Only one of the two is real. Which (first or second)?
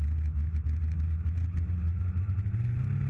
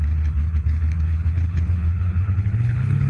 first